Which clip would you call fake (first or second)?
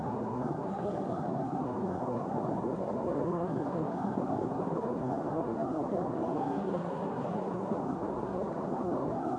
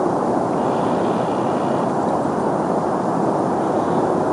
first